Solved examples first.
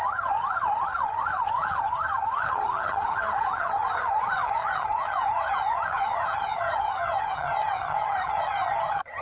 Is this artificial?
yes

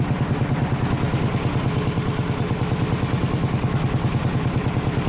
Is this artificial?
no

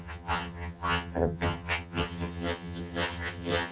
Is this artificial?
yes